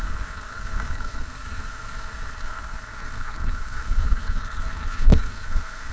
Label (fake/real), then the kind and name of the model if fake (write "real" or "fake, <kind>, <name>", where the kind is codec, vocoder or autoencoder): fake, codec, SNAC